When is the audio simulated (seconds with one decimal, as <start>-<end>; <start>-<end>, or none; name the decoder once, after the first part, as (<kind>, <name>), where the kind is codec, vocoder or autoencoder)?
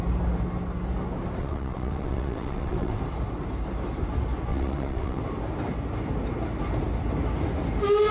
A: 1.4-3.0 (vocoder, WaveNeXt); 4.5-5.2